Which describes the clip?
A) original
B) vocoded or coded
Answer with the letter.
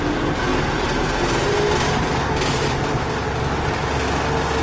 A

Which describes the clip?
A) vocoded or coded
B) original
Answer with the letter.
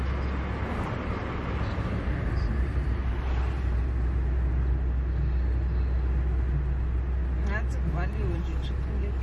B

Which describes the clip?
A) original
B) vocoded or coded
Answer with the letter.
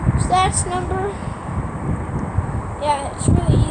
B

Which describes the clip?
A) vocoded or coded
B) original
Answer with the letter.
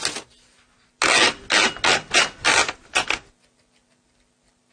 B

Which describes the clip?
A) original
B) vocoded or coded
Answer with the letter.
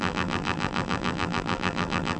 B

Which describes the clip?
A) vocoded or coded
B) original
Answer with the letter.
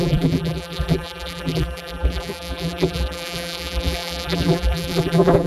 A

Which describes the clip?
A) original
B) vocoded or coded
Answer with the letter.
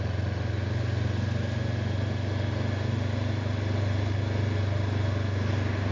A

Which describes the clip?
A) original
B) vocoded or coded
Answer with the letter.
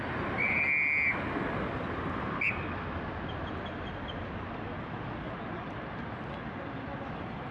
A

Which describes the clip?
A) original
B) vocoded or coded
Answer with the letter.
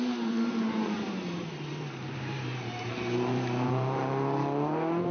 B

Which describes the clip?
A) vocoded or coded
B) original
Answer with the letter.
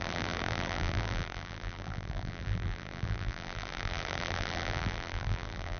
A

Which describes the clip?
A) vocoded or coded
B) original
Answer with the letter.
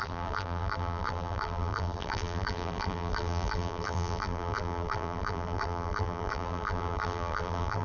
A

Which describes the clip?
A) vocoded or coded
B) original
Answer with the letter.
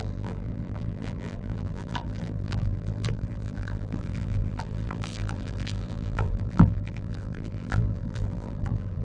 A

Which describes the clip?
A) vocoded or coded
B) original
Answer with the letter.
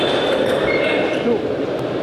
A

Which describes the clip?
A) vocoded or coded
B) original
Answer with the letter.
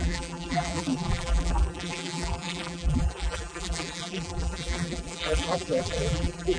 A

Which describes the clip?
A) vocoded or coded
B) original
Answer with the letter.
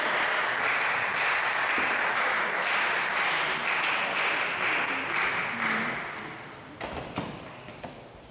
B